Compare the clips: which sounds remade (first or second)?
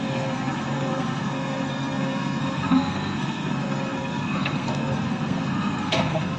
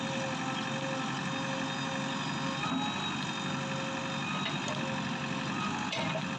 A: first